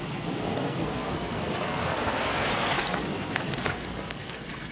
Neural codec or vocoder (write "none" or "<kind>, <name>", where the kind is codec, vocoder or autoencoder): codec, SNAC